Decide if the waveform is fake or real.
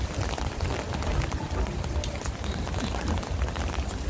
real